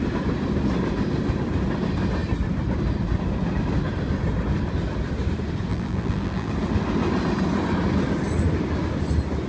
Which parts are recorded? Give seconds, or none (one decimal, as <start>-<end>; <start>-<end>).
0.0-5.7; 6.5-9.5